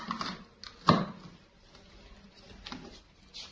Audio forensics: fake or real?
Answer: real